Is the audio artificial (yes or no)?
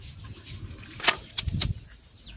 no